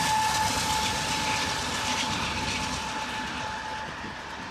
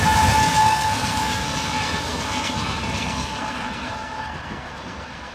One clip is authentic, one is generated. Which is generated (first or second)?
second